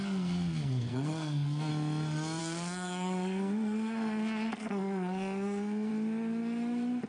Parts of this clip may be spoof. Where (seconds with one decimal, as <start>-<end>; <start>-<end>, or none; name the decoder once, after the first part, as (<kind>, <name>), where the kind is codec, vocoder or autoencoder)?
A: 0.0-1.7 (codec, SNAC); 2.4-5.9